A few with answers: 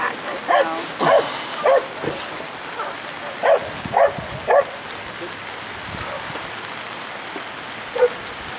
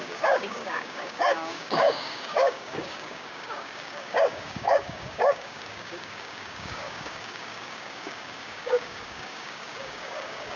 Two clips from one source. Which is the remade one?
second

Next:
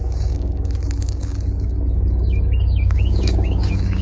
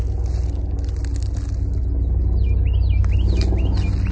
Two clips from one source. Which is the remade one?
first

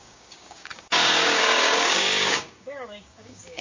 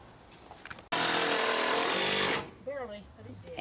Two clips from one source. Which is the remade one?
first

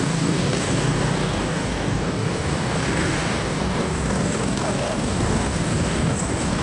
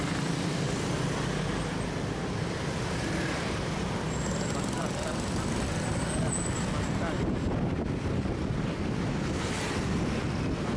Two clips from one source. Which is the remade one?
first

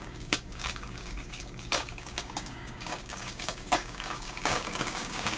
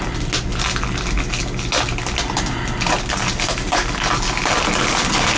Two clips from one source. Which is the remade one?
first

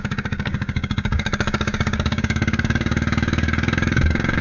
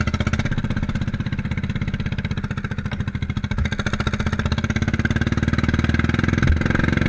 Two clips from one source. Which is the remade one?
first